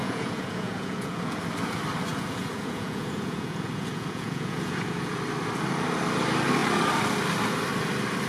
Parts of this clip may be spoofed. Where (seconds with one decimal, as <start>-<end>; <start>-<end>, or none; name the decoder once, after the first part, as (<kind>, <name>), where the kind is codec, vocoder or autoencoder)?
0.0-1.4 (vocoder, Vocos); 2.1-5.2